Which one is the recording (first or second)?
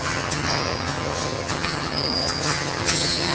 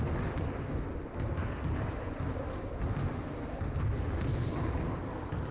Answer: second